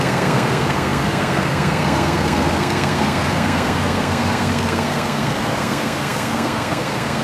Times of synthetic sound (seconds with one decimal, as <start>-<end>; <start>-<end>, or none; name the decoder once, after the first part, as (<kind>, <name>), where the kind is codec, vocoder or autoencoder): 0.0-7.2 (codec, SNAC)